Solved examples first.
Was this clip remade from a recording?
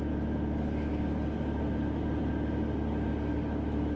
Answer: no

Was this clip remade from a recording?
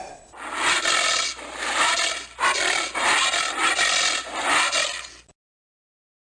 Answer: no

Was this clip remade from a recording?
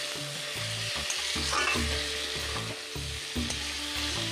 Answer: no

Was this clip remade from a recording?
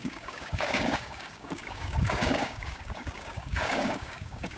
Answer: yes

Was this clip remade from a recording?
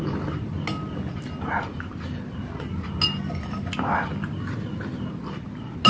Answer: no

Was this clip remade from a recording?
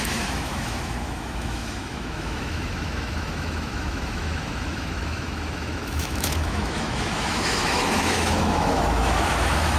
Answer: yes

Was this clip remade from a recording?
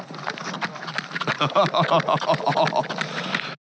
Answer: no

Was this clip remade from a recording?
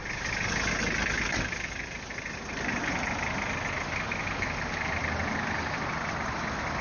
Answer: no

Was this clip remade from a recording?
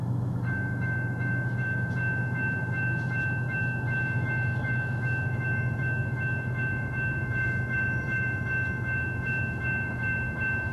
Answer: yes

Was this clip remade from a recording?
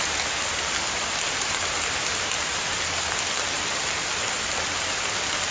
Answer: no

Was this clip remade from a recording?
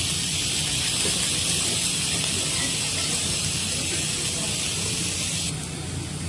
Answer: no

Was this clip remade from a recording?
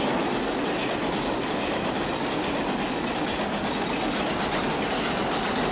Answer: no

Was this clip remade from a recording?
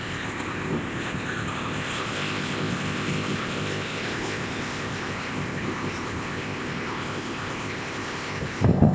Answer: yes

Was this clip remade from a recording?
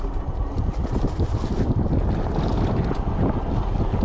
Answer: no